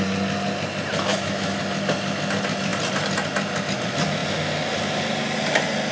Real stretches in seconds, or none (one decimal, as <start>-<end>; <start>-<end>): 0.0-1.1; 1.6-5.9